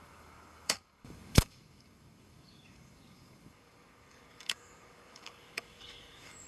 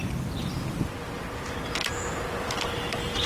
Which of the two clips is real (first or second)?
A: second